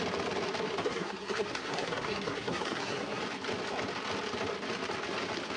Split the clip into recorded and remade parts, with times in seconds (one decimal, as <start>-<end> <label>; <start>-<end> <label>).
0.0-0.8 recorded; 0.8-3.2 remade; 3.2-5.6 recorded